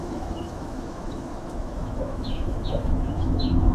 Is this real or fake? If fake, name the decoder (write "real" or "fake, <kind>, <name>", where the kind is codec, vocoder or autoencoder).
fake, autoencoder, DAC-VAE